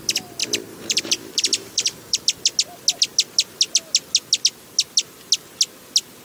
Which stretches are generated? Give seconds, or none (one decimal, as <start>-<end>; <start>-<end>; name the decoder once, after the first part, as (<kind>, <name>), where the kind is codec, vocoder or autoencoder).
0.4-2.2 (vocoder, BigVGAN v2)

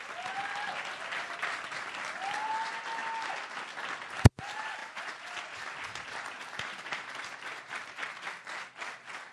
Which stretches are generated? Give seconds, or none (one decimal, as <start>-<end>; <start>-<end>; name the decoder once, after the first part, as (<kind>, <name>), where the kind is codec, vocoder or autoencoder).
4.8-8.1 (vocoder, BigVGAN v2)